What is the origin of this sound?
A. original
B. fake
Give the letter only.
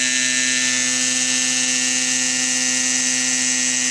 A